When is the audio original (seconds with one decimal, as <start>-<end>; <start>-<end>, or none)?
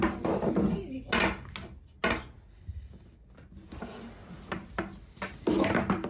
0.0-6.1